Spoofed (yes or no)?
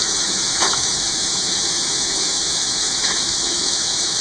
yes